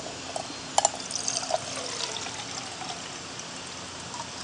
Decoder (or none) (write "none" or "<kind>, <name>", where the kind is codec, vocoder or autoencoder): none